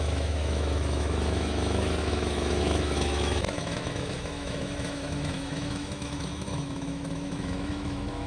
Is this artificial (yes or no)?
yes